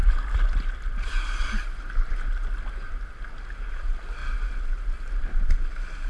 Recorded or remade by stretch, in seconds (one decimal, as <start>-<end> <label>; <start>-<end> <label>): 0.0-6.1 recorded